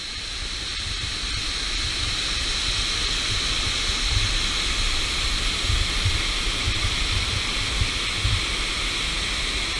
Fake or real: real